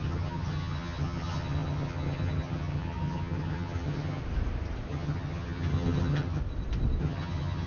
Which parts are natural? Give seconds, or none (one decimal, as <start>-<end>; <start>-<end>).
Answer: 4.2-4.9; 6.4-7.0